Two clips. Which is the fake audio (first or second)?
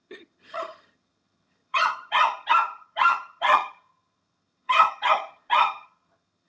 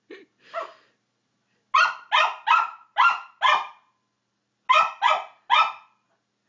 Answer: first